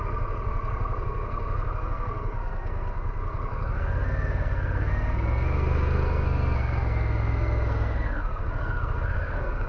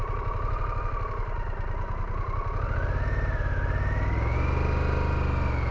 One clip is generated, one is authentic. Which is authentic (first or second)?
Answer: second